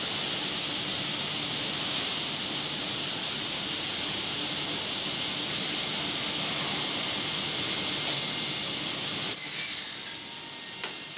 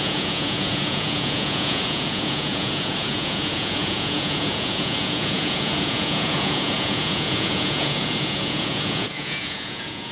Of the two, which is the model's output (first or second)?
second